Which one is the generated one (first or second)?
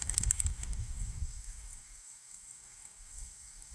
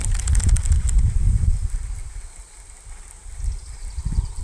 first